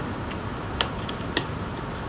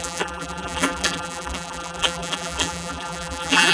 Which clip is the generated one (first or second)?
second